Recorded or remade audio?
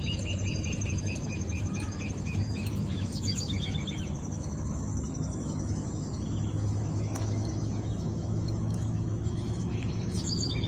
remade